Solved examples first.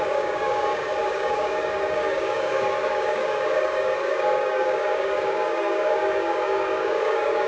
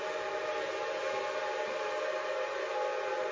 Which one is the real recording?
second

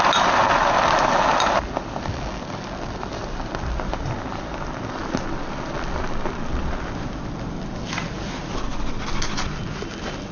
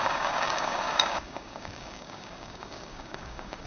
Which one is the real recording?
first